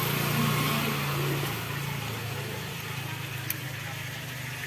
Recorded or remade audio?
recorded